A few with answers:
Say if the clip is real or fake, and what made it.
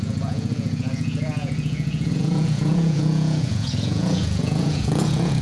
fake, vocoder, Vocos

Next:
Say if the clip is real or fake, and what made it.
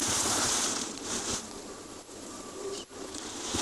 fake, vocoder, Vocos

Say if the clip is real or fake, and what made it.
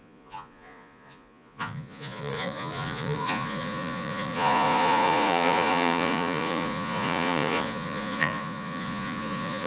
fake, vocoder, Vocos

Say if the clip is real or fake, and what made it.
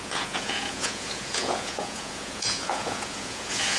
fake, vocoder, Vocos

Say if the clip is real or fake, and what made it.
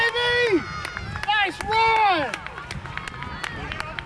real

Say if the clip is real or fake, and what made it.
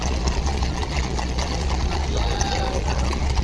fake, vocoder, Vocos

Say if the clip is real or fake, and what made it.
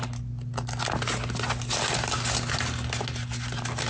real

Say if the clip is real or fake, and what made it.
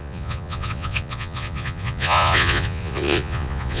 fake, vocoder, Vocos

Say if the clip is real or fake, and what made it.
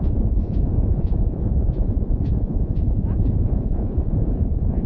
fake, vocoder, Vocos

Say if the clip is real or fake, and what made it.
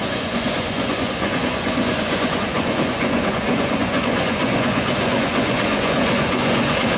fake, vocoder, Vocos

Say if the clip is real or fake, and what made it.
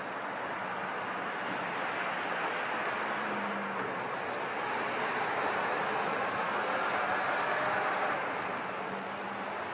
real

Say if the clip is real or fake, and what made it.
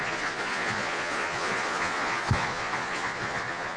fake, vocoder, Vocos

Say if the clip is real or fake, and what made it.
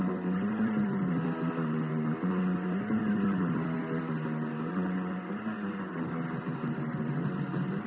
real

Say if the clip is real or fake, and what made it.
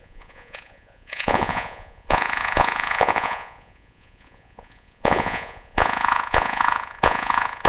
fake, vocoder, Vocos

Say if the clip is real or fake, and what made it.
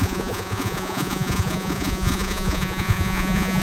fake, vocoder, Vocos